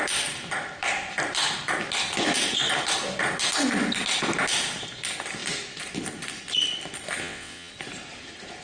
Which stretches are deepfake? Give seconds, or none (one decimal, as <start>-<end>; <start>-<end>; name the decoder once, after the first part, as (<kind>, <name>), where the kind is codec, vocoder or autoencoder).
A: 7.2-7.7 (vocoder, WaveNeXt)